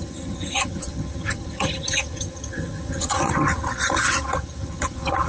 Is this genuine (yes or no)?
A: no